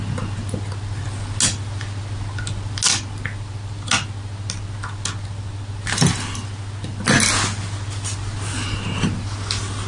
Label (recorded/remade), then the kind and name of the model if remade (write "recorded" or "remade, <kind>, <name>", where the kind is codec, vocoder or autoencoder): recorded